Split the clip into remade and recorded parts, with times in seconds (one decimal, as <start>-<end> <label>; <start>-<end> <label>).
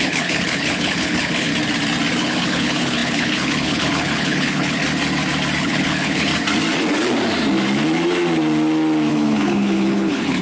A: 0.0-1.5 remade; 1.5-2.2 recorded; 2.2-4.8 remade; 4.8-5.6 recorded; 5.6-6.3 remade; 6.3-9.1 recorded; 9.1-10.4 remade